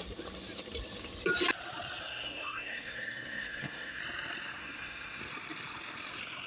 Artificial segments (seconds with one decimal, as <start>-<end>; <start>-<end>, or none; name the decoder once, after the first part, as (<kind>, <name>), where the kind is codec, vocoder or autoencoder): 2.0-4.0 (codec, SNAC); 4.6-5.2